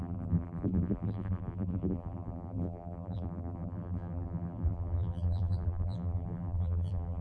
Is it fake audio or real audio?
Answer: fake